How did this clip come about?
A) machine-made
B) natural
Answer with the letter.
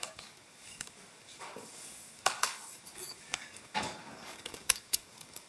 A